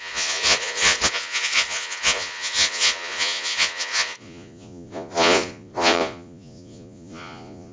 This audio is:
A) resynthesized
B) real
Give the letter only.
A